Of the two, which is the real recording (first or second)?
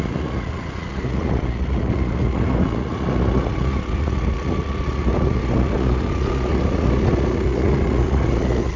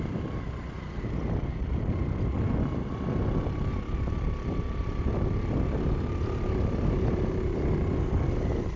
second